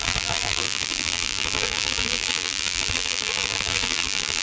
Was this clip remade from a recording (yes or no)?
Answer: yes